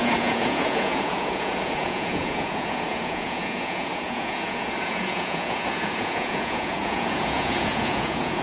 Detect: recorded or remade remade